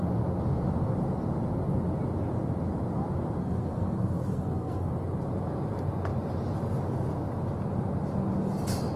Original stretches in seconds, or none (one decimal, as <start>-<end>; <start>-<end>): 0.0-3.4; 4.9-9.0